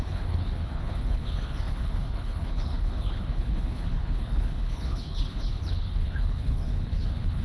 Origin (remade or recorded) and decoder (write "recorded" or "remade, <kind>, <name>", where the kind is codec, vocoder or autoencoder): remade, codec, HILCodec